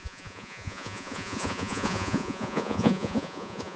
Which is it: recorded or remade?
remade